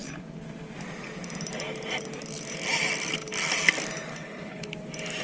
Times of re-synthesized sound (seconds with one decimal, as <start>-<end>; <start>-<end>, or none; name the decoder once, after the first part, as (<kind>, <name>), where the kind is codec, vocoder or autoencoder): 4.1-4.7 (codec, HILCodec)